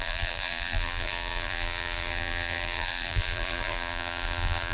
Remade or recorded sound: remade